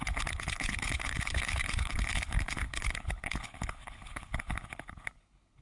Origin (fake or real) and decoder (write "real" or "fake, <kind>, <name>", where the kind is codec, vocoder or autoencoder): fake, codec, HILCodec